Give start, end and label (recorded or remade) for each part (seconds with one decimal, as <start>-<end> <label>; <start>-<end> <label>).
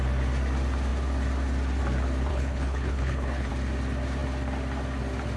0.0-2.3 recorded; 2.3-3.5 remade; 3.5-5.4 recorded